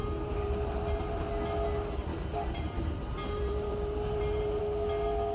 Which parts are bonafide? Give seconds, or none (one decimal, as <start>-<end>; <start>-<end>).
1.2-2.1; 4.6-5.3